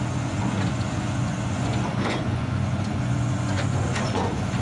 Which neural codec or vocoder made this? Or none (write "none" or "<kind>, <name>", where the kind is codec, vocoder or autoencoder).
vocoder, Vocos